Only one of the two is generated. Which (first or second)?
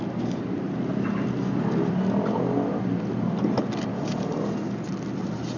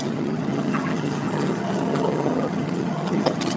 second